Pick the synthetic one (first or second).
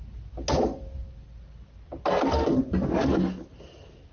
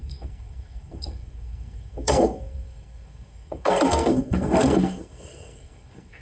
second